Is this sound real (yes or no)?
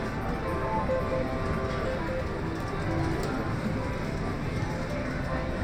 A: yes